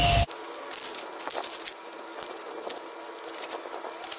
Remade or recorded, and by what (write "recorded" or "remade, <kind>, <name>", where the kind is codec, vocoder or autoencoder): recorded